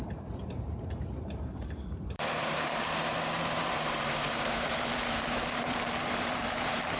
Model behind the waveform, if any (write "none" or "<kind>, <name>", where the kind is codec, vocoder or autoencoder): vocoder, BigVGAN v2